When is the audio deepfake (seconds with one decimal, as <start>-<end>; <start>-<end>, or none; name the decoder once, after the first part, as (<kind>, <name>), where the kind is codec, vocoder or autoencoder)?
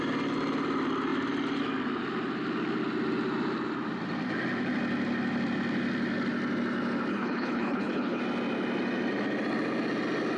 7.1-8.2 (codec, HILCodec)